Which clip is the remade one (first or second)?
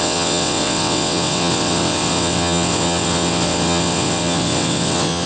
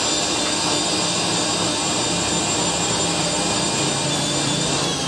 first